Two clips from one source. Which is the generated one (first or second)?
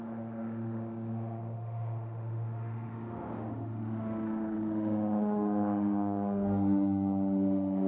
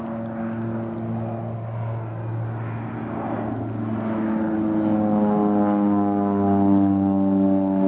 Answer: first